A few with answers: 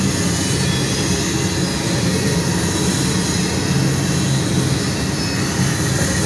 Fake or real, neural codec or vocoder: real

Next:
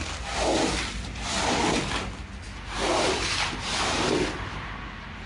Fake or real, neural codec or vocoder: real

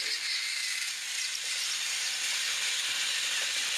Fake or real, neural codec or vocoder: real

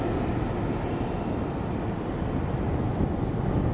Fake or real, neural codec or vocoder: real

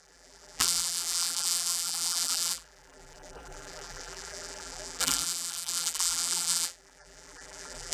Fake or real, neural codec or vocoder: fake, vocoder, BigVGAN v2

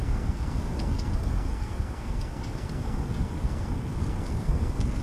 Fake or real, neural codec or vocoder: fake, codec, SNAC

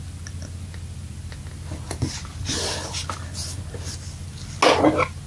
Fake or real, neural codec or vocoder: real